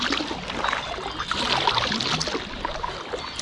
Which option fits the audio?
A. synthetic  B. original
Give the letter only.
B